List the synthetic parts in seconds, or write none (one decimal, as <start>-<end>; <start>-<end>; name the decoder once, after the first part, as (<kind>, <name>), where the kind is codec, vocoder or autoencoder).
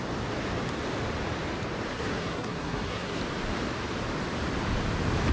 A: 1.9-3.2 (codec, SNAC)